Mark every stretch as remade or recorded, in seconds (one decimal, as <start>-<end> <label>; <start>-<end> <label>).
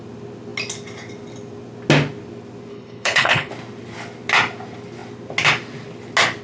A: 0.0-2.7 recorded; 2.7-3.5 remade; 3.5-6.4 recorded